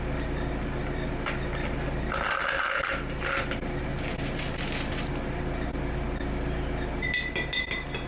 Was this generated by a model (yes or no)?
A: no